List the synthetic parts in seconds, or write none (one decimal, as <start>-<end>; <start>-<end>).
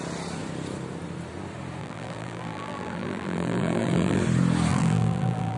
1.8-4.2; 4.7-5.6